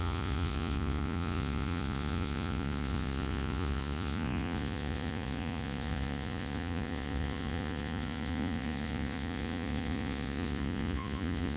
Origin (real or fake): fake